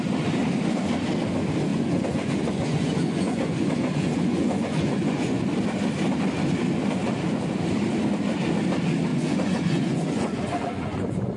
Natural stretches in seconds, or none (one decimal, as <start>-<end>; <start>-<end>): 0.0-1.7; 5.4-9.1